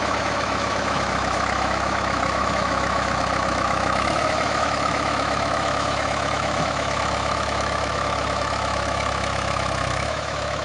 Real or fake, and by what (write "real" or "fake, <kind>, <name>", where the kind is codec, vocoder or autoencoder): fake, autoencoder, DAC-VAE